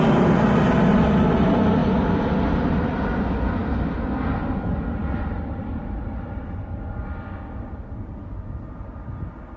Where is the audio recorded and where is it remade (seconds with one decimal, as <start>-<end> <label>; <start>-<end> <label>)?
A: 0.0-3.6 recorded; 3.6-4.5 remade; 4.5-9.6 recorded